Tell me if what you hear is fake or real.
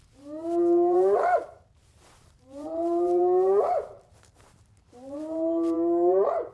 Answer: fake